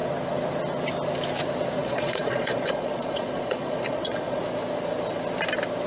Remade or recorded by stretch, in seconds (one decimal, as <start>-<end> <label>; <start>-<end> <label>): 0.0-1.8 recorded; 1.8-4.4 remade; 4.4-5.9 recorded